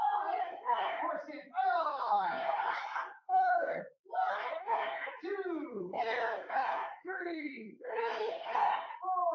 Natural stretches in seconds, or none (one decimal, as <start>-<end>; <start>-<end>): 0.0-0.4; 1.0-1.8; 3.8-4.3; 5.1-5.7; 8.9-9.3